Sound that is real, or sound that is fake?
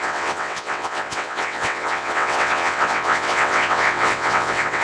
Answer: fake